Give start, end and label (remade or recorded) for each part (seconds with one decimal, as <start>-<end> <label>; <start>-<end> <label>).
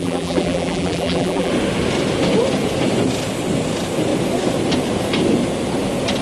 0.0-1.5 remade; 1.5-6.2 recorded